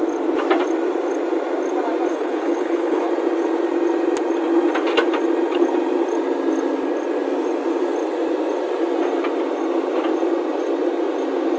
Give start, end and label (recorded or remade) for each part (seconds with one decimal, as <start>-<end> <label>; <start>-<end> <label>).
0.0-2.1 recorded; 2.1-3.1 remade; 3.1-11.6 recorded